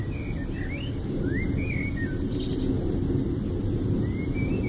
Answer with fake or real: real